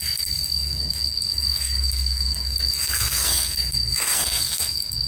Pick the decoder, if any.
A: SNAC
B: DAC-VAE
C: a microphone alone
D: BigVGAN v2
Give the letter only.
A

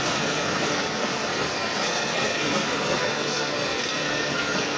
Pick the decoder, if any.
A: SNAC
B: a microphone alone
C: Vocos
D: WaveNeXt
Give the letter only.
A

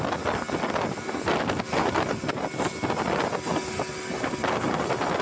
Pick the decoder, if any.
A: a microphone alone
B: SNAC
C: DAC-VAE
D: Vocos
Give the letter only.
A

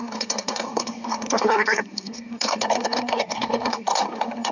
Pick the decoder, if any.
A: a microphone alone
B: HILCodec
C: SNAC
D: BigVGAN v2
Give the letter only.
C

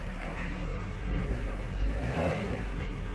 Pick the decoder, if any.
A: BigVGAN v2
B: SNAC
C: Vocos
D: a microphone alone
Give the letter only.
B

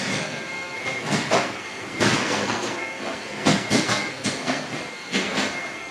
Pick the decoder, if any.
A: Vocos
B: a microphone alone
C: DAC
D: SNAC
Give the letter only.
D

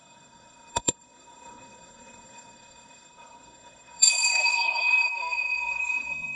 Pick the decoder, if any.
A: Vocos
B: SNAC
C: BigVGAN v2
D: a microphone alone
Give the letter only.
B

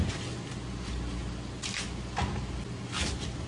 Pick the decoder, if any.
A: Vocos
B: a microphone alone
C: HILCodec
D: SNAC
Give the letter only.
B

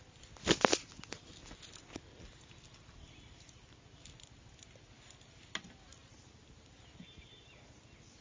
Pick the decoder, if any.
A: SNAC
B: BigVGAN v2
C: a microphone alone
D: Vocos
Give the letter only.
C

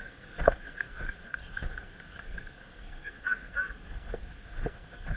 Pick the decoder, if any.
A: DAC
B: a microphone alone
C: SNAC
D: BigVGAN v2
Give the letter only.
C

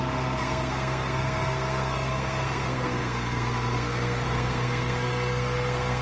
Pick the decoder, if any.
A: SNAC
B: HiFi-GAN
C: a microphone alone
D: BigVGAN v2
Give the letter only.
A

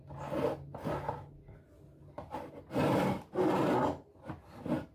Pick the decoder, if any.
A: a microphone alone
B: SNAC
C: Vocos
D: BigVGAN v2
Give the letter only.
A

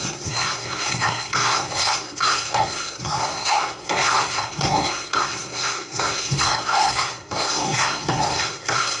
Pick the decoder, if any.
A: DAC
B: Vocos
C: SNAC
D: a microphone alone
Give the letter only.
C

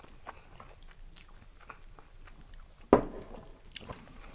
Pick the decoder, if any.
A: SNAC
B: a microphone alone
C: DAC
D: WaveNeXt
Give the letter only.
B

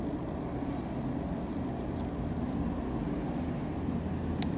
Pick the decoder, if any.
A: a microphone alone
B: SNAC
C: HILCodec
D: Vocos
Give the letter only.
A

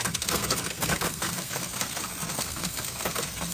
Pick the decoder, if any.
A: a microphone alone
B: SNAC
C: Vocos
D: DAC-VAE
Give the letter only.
B